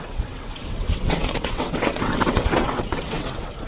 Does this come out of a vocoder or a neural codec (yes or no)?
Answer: yes